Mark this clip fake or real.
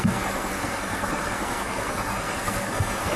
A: fake